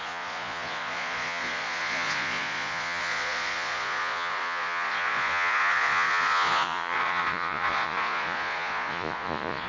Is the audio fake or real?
fake